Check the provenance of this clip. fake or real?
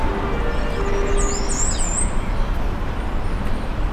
real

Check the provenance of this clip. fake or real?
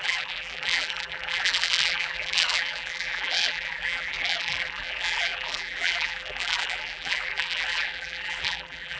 fake